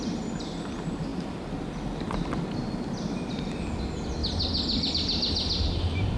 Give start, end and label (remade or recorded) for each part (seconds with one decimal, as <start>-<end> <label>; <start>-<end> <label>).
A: 0.0-6.2 recorded